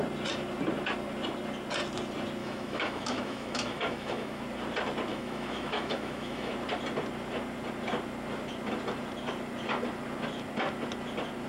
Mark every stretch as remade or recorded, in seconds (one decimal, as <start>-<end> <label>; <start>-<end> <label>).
0.0-2.4 recorded; 2.4-4.4 remade; 4.4-5.1 recorded; 5.1-6.5 remade; 6.5-11.5 recorded